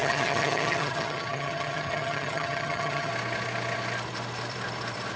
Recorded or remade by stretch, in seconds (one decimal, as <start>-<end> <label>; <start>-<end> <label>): 0.0-3.1 remade; 3.1-5.2 recorded